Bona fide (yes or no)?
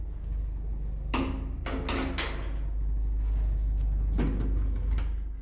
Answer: yes